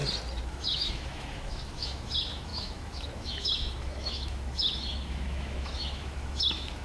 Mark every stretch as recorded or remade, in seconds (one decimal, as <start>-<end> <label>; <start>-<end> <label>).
0.0-0.5 recorded; 0.5-6.8 remade